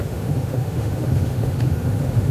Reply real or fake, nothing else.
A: fake